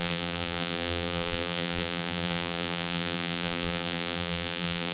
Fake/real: fake